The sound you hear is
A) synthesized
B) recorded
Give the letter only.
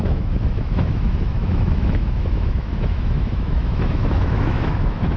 A